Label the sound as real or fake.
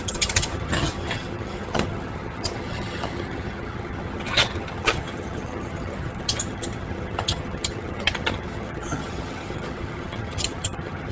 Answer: fake